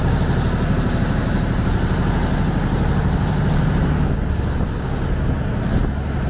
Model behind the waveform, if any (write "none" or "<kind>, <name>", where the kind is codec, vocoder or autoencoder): none